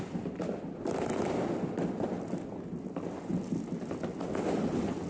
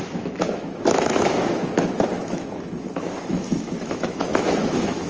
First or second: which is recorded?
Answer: first